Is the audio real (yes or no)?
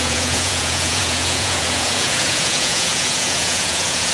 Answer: no